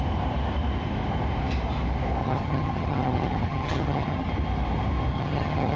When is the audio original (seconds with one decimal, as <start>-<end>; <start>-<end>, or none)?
0.0-2.2; 4.3-5.1